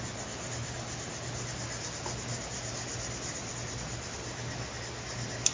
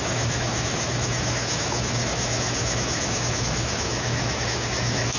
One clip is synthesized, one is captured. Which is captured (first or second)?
first